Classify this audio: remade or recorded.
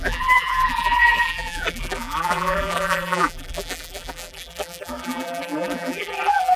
remade